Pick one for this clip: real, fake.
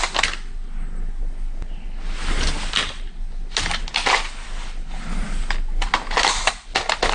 real